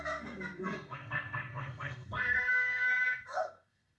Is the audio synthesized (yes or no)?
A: yes